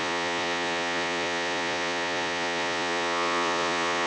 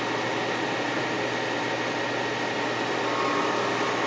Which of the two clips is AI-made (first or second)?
first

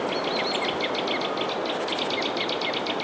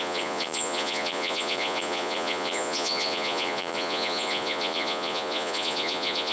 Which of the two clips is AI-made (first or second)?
second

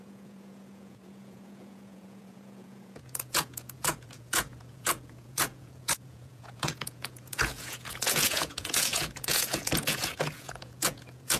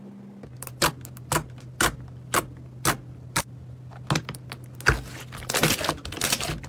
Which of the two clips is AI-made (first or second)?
first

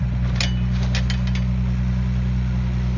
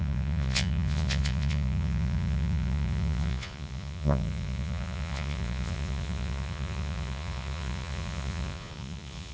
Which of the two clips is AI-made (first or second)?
second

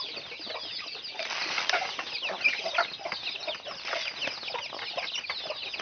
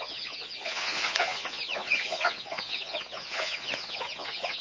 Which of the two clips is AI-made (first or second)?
second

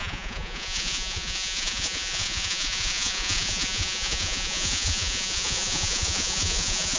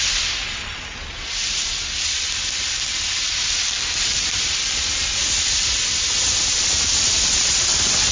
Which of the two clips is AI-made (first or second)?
first